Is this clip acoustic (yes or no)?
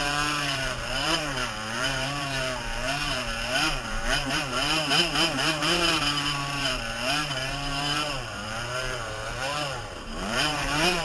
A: no